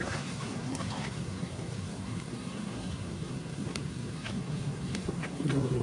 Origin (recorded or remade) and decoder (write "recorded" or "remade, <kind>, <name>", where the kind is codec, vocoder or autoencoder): remade, codec, SNAC